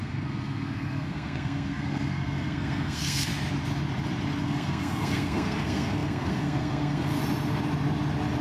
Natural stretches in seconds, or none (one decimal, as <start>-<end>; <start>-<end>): 3.3-4.4; 7.2-8.4